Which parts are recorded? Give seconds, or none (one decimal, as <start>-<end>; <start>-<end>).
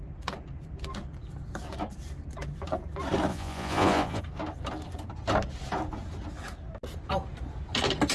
0.0-3.3; 4.2-8.1